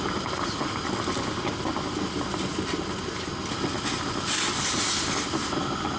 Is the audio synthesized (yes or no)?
no